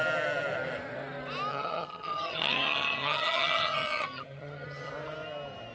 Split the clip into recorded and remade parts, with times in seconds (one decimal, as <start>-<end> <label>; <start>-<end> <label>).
0.0-1.5 recorded; 1.5-4.9 remade; 4.9-5.7 recorded